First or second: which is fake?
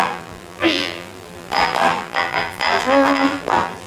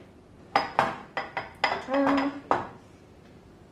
first